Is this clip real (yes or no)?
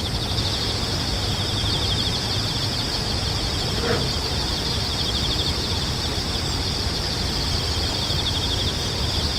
yes